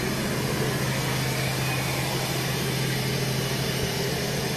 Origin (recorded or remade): recorded